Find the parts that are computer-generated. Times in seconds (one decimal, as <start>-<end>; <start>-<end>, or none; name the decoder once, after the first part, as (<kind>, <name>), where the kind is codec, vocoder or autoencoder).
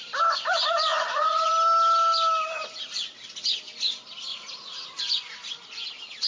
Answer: 0.9-1.5 (vocoder, Vocos); 4.3-5.0